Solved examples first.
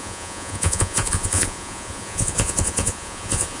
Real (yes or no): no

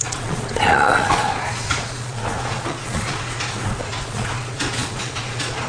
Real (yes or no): no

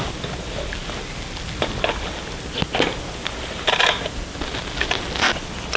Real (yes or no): yes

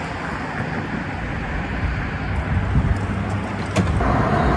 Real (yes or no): yes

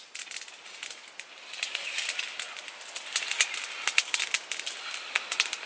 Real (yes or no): yes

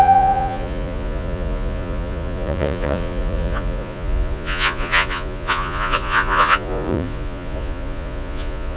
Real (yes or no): no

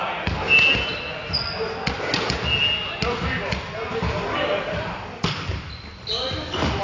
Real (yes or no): yes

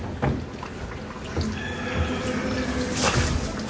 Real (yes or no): yes